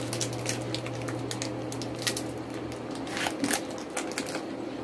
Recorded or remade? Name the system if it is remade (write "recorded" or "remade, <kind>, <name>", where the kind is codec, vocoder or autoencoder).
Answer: recorded